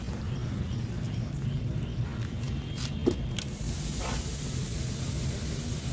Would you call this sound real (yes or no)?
yes